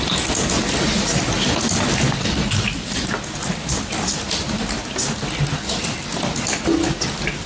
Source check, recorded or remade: recorded